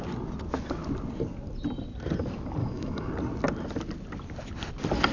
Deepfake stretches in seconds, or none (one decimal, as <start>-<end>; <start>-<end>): 2.6-3.1